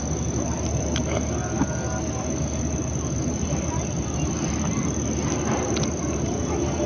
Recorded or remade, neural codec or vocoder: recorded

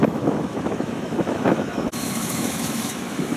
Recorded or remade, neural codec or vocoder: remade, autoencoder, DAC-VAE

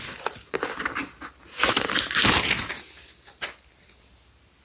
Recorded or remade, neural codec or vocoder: recorded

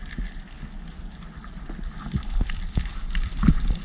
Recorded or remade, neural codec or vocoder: recorded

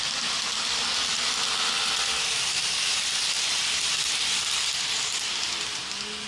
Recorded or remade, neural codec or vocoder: recorded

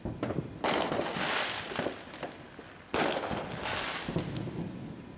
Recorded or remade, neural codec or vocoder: recorded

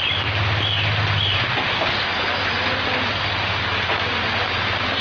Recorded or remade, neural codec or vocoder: recorded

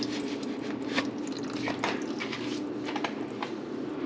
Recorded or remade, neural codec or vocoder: recorded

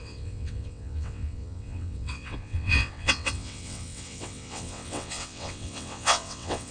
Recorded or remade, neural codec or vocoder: remade, vocoder, WaveNeXt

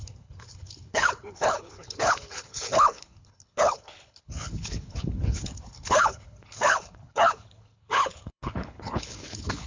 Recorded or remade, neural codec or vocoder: remade, codec, HILCodec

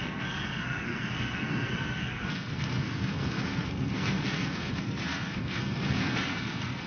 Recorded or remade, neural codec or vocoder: remade, codec, SNAC